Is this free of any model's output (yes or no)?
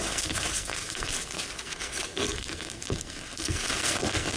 no